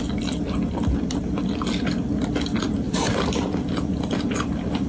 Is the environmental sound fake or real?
real